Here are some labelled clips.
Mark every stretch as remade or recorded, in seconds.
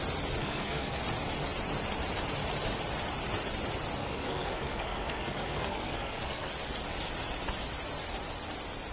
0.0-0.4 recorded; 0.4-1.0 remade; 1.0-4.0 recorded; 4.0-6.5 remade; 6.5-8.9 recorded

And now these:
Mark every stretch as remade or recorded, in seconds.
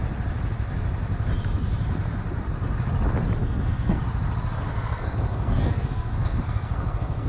0.0-3.4 recorded; 3.4-4.0 remade; 4.0-4.7 recorded; 4.7-7.3 remade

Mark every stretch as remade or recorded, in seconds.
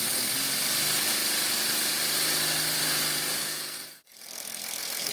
0.0-3.4 recorded; 3.4-5.1 remade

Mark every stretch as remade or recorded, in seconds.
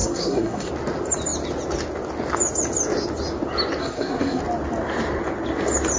0.0-0.7 remade; 0.7-3.8 recorded; 3.8-4.4 remade; 4.4-6.0 recorded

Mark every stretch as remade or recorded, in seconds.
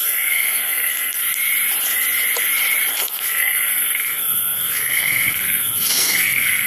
0.0-1.2 remade; 1.2-2.9 recorded; 2.9-6.7 remade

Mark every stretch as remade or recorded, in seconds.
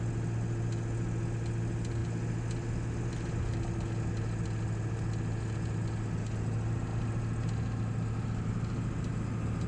0.0-9.7 recorded